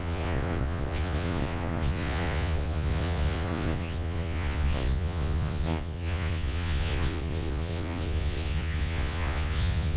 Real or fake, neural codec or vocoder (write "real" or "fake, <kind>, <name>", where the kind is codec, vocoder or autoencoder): fake, vocoder, Vocos